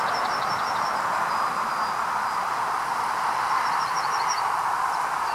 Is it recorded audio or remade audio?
recorded